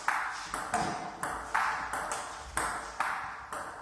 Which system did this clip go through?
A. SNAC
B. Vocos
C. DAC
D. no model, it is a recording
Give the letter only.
D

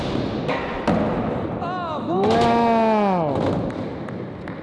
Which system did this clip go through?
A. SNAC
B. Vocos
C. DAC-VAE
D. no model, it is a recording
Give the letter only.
D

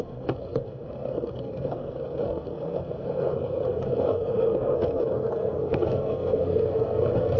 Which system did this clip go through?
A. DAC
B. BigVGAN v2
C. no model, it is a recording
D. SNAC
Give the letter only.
D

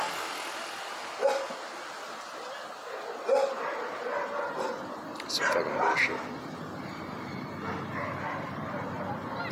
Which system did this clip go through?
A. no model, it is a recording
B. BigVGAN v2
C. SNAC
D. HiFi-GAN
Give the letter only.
A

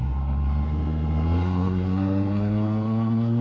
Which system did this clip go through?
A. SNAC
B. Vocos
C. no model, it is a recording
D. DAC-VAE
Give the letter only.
A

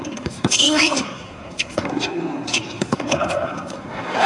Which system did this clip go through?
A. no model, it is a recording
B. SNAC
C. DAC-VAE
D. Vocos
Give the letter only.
B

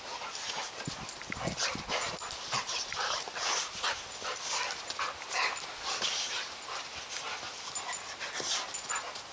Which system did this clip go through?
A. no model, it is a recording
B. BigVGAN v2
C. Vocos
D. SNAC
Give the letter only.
A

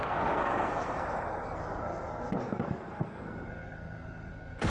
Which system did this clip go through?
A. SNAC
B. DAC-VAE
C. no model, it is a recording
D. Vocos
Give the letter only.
A